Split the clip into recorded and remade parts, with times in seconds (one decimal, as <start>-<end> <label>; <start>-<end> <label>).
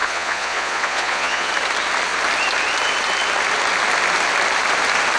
0.0-1.5 remade; 1.5-5.2 recorded